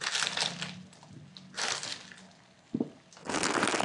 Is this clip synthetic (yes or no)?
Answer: no